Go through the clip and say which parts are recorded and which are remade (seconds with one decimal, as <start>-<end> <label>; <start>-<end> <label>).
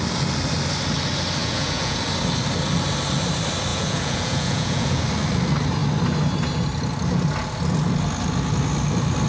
0.0-1.4 recorded; 1.4-2.0 remade; 2.0-3.7 recorded; 3.7-5.0 remade; 5.0-9.3 recorded